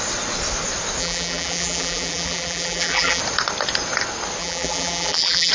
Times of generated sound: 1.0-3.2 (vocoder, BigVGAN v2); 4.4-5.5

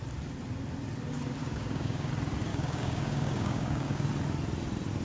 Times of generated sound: 1.4-2.1 (codec, DAC); 2.5-4.1

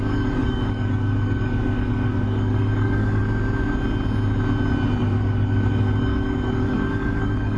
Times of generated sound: 0.0-3.2 (codec, DAC); 5.0-7.6

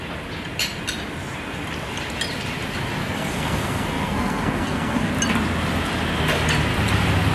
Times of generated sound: 3.0-5.1 (codec, SNAC)

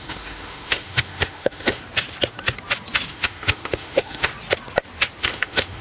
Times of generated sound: 0.0-1.8 (autoencoder, DAC-VAE); 3.1-4.3; 5.2-5.8

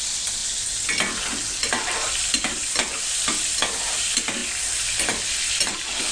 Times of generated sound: none

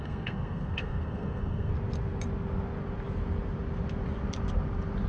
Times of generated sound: 0.0-1.7 (codec, SNAC)